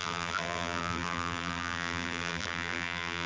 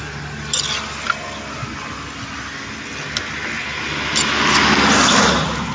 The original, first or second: second